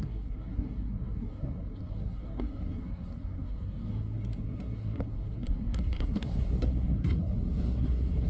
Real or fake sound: fake